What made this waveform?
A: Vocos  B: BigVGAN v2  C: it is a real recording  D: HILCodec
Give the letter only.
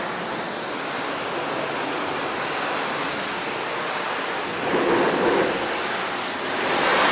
C